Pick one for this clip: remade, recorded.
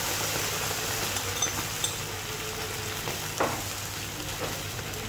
recorded